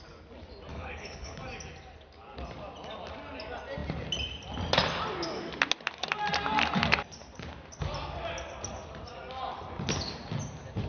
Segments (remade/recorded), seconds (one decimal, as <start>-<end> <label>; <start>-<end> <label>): 0.0-0.7 recorded; 0.7-1.4 remade; 1.4-10.9 recorded